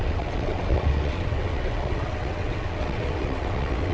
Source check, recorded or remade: remade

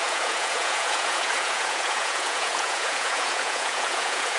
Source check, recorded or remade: remade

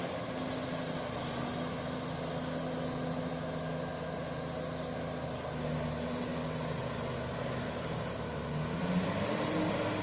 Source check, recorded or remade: recorded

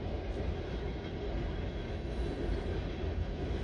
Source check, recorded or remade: recorded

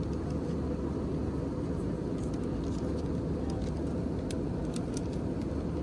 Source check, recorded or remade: recorded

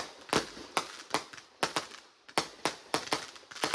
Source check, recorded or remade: recorded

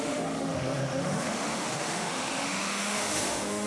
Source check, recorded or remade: remade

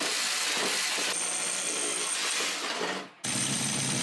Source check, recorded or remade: recorded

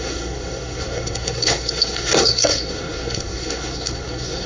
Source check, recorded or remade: remade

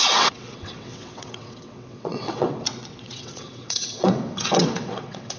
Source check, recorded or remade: remade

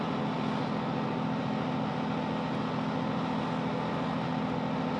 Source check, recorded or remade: recorded